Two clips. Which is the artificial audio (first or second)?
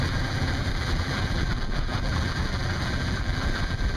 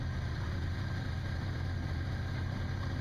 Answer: first